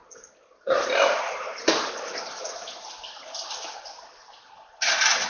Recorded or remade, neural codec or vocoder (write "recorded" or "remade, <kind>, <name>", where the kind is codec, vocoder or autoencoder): recorded